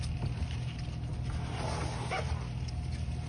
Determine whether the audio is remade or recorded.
recorded